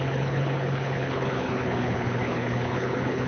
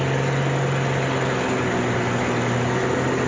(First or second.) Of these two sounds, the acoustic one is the second